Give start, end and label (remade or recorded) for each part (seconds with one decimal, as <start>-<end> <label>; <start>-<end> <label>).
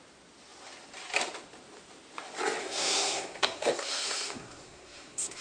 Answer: 0.0-2.6 recorded; 2.6-5.4 remade